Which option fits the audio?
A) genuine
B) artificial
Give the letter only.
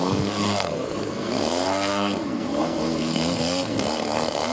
B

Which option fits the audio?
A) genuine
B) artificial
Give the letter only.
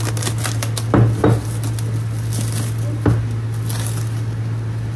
A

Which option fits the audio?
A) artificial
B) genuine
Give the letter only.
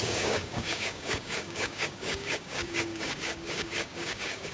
A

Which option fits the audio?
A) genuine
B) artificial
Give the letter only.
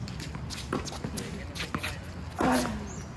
A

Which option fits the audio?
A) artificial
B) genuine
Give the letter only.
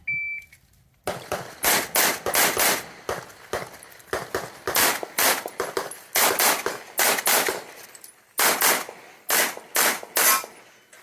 B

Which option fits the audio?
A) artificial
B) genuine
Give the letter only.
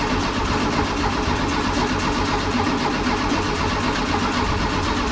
B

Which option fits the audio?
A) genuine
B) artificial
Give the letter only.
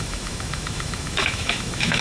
B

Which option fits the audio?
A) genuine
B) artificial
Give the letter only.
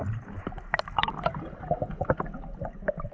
A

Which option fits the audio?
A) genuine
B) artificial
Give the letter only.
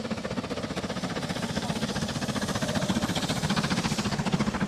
A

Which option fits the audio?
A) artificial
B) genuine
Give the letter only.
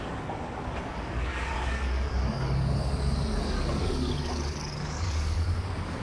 A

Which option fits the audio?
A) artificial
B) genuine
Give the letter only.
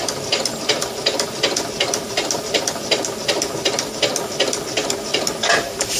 B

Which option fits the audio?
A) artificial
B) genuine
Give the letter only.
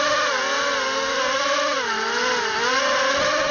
B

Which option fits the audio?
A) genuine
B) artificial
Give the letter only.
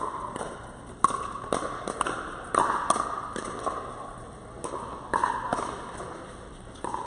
A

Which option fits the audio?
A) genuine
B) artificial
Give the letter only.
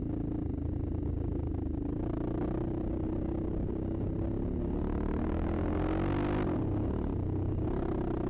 A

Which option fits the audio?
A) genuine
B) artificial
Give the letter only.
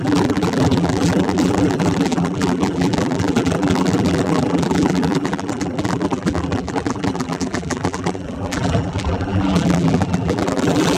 B